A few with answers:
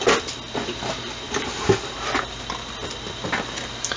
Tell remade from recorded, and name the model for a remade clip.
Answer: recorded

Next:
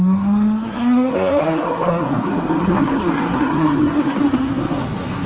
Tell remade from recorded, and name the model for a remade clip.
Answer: remade, codec, SNAC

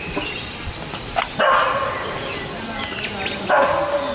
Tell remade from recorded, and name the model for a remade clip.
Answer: remade, vocoder, BigVGAN v2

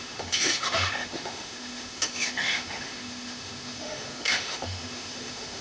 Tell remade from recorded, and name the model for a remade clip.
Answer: remade, autoencoder, DAC-VAE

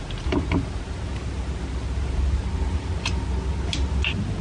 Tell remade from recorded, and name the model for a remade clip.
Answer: recorded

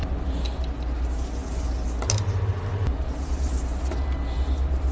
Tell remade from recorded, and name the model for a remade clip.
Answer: recorded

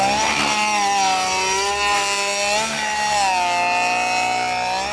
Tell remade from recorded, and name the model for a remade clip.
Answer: recorded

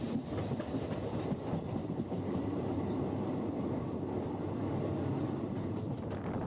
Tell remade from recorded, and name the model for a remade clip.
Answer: remade, vocoder, BigVGAN v2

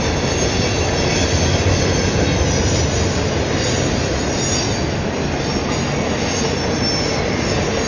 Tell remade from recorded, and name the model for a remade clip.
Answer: recorded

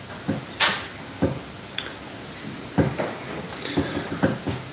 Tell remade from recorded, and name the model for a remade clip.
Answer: recorded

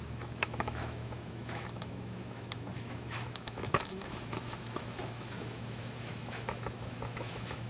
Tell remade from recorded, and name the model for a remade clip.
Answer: remade, autoencoder, DAC-VAE